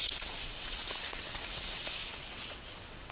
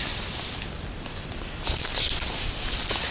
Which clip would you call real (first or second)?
second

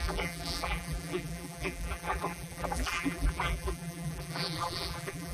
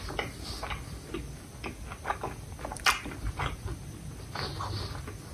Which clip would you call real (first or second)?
second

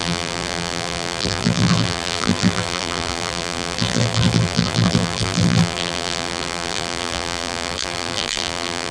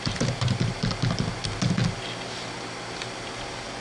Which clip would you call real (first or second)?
second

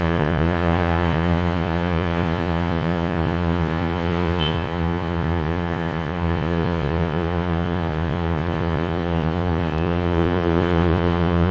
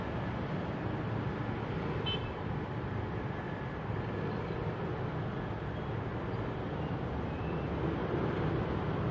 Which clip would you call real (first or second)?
second